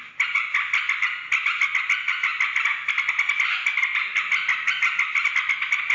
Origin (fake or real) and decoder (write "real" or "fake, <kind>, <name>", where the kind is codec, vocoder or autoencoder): real